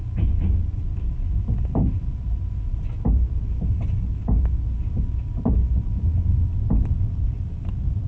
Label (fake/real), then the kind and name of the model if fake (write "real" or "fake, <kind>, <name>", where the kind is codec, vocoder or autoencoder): real